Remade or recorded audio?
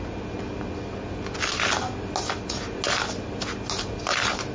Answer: recorded